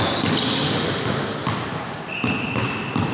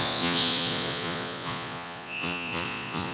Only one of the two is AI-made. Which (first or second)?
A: second